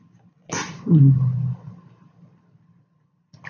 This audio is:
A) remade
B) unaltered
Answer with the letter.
B